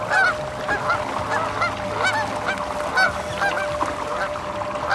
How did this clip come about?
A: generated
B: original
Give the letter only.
B